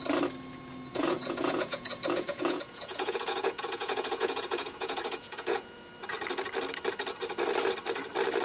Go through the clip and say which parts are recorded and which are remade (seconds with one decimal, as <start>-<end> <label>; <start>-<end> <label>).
0.0-0.9 recorded; 0.9-5.9 remade; 5.9-8.4 recorded